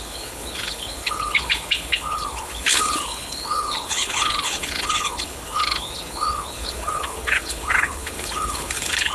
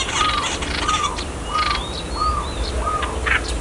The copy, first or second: first